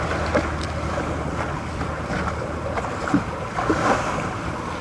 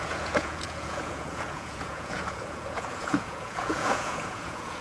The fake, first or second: second